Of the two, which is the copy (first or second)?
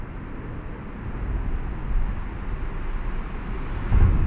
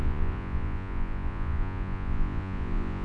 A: second